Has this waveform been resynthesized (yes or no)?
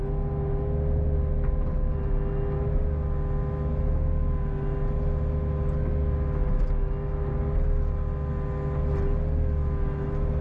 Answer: no